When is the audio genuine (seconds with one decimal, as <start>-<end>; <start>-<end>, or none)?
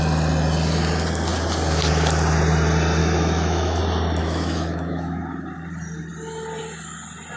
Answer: 0.0-3.0; 3.8-4.2; 5.2-7.4